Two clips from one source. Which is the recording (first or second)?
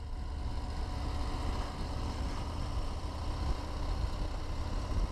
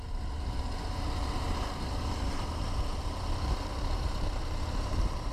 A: first